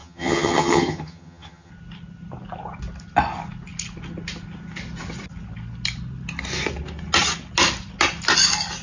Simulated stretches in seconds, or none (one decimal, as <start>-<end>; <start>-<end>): 0.0-1.7